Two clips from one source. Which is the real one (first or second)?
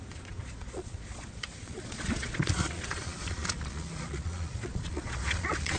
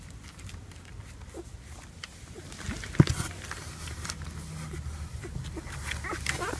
second